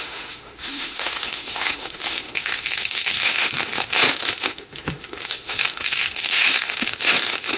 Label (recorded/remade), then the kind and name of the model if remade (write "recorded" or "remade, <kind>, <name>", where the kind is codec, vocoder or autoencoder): remade, autoencoder, DAC-VAE